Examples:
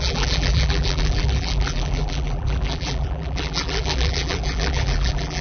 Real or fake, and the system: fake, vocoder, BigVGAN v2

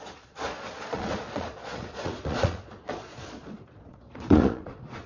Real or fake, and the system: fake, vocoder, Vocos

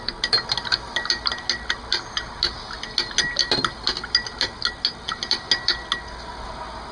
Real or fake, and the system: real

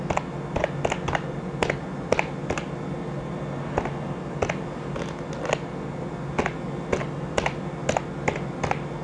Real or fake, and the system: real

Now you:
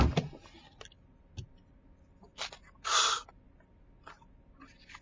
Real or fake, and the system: real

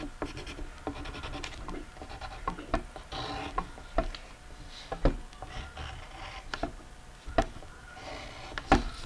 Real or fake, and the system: real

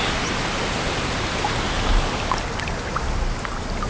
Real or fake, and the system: real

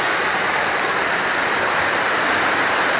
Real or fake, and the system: real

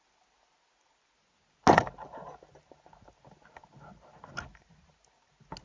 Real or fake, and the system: real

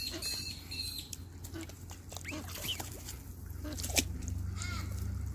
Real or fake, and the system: real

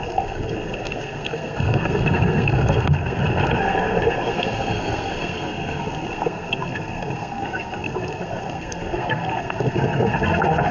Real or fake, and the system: fake, codec, SNAC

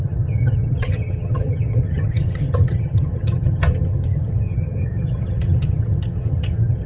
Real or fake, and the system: fake, vocoder, HiFi-GAN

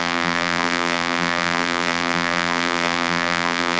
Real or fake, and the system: fake, vocoder, BigVGAN v2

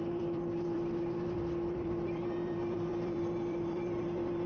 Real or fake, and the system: fake, vocoder, BigVGAN v2